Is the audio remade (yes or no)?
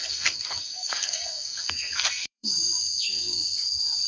yes